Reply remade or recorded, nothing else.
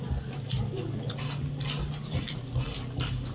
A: recorded